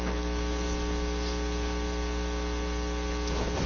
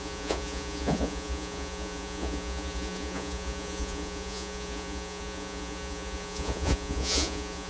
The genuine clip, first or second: first